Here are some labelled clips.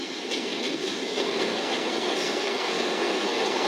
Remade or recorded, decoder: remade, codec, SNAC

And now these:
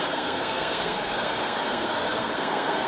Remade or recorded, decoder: remade, codec, SNAC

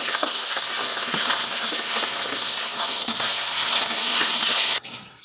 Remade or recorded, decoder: remade, codec, SNAC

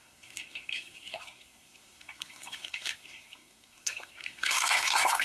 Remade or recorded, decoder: remade, codec, SNAC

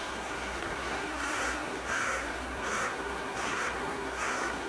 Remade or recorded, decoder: remade, codec, SNAC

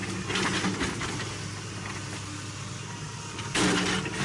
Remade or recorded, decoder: recorded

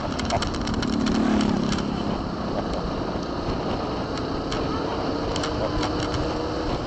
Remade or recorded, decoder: recorded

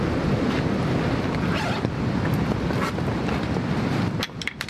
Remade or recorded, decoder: recorded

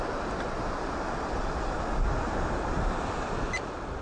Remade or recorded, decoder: recorded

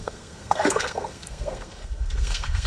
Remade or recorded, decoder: remade, codec, SNAC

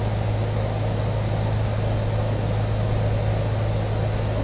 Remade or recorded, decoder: recorded